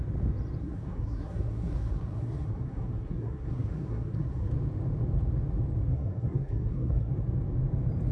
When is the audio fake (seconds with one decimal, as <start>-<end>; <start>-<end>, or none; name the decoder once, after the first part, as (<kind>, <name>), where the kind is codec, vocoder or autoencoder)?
0.6-4.5 (codec, SNAC); 5.9-7.1